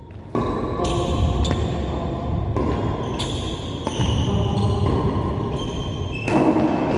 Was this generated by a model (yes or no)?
no